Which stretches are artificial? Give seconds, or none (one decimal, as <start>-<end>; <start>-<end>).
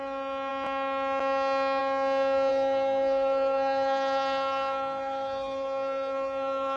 2.5-6.8